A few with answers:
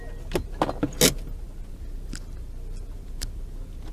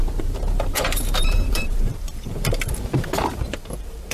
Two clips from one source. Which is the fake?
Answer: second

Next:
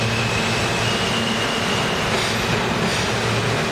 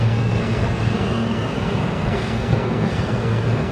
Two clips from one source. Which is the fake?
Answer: second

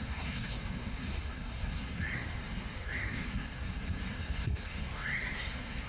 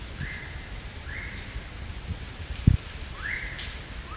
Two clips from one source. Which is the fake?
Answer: first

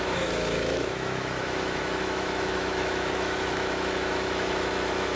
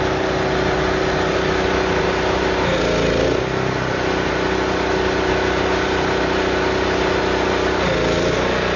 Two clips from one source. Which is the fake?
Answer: first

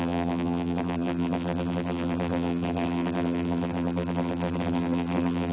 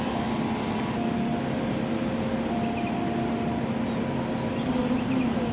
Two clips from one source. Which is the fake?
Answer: first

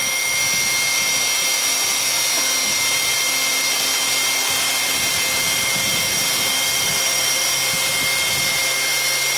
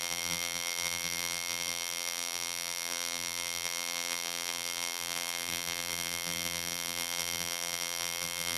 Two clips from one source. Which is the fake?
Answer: second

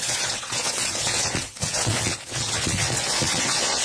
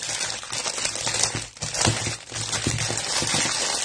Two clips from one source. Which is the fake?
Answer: first